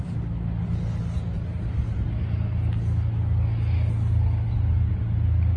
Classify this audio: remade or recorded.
recorded